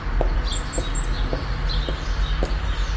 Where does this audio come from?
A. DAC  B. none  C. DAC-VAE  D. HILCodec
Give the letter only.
B